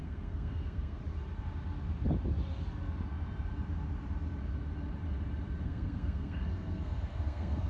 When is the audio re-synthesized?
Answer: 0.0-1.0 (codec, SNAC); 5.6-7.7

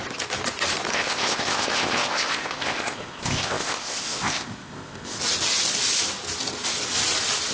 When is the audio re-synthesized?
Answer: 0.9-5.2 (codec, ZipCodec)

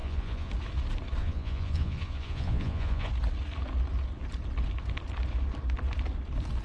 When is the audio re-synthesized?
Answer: 0.0-0.5 (vocoder, Vocos); 1.2-3.1

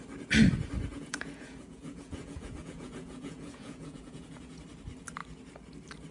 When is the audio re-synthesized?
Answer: 0.9-4.6 (vocoder, Vocos)

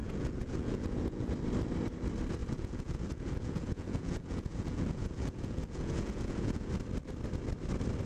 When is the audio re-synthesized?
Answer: 0.0-1.3 (vocoder, Vocos); 2.4-6.7

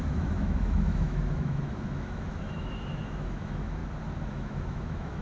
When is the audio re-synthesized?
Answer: 0.0-3.8 (autoencoder, DAC-VAE); 4.3-5.2

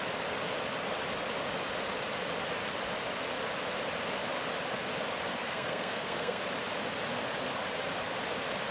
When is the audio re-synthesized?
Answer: 5.3-6.4 (codec, SNAC)

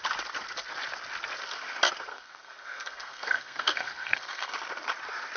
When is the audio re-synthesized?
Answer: 2.1-4.5 (codec, SNAC)